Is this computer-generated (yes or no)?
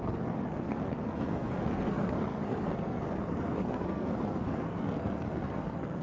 yes